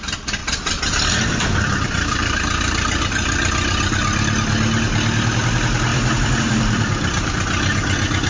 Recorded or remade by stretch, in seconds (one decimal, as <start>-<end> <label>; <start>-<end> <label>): 0.0-0.4 recorded; 0.4-2.4 remade; 2.4-5.9 recorded; 5.9-7.3 remade; 7.3-8.3 recorded